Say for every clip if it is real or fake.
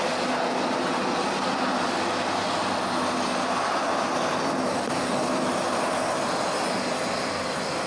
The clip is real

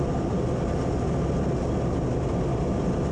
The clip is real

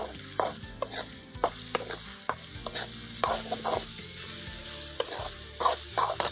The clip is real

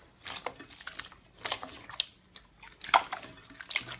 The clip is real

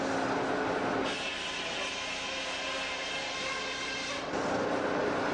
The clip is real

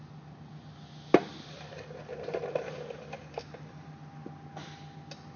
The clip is real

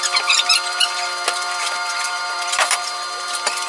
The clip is real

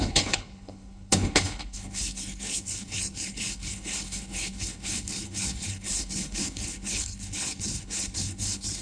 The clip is fake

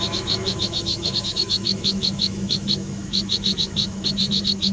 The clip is fake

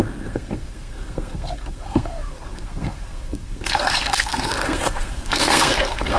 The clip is fake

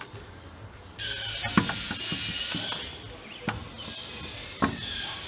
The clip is real